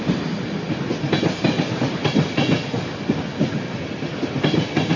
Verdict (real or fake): real